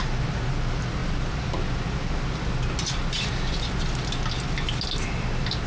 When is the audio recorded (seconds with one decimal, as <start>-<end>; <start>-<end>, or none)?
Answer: 0.0-5.7